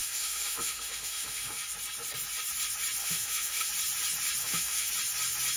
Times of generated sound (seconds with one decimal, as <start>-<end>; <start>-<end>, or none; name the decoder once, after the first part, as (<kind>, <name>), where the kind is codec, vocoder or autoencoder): 0.0-1.6 (autoencoder, DAC-VAE); 3.0-3.7; 4.4-4.9